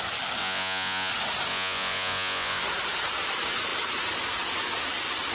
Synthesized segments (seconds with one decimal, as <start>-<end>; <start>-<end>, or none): 0.4-1.1; 1.5-2.6